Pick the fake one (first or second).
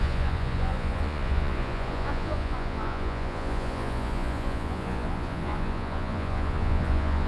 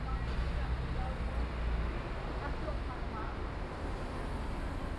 first